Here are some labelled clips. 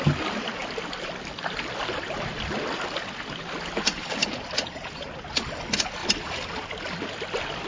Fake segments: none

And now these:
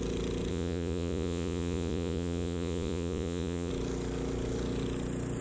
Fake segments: 0.5-3.7 (vocoder, Vocos)

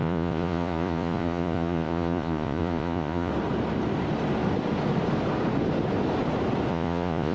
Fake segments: 0.0-3.3 (vocoder, Vocos); 6.7-7.3

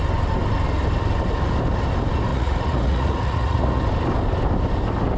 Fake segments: 2.3-3.8 (vocoder, Vocos)